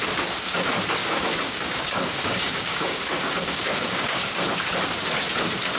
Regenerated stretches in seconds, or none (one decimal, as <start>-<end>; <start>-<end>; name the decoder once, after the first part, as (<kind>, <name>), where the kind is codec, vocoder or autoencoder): 1.0-4.4 (codec, DAC)